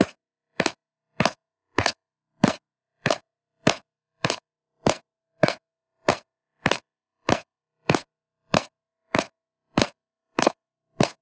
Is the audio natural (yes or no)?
no